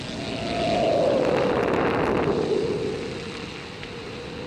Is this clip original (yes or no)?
yes